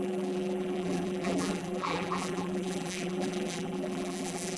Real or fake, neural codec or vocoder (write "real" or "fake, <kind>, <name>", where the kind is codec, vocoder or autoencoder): fake, vocoder, BigVGAN v2